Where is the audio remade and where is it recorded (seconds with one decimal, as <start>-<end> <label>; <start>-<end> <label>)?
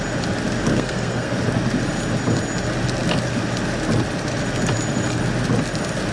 0.0-0.7 recorded; 0.7-1.3 remade; 1.3-6.1 recorded